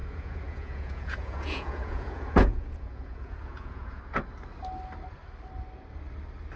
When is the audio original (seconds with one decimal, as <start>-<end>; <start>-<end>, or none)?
4.0-6.6